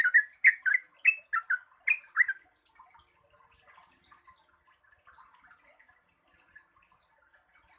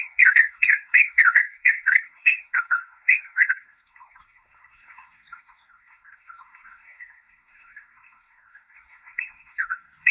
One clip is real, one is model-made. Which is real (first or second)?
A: first